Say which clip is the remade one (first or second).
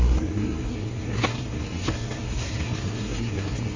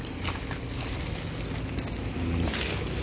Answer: first